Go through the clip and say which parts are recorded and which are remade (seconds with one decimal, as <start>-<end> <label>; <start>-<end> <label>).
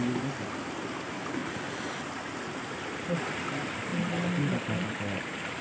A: 0.0-5.6 recorded